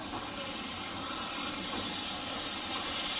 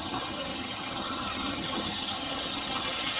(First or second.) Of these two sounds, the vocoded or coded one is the second